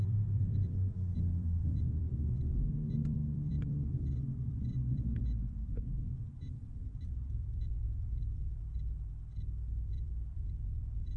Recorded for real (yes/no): no